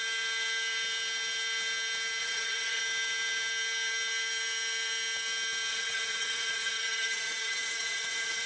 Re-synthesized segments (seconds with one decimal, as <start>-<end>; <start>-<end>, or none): 2.2-2.8; 5.7-8.5